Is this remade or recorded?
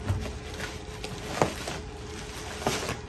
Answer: recorded